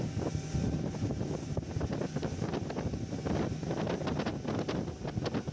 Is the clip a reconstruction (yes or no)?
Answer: no